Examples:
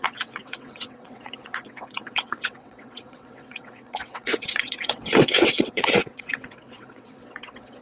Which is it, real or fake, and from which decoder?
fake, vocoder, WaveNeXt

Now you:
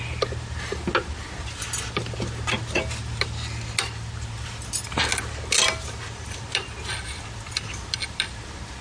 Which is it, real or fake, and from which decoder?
real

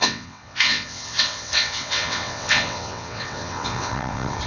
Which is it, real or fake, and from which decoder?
fake, vocoder, WaveNeXt